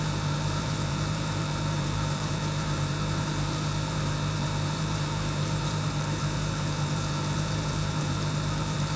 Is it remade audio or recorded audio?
remade